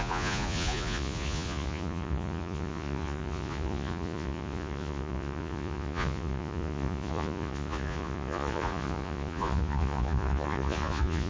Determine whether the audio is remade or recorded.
remade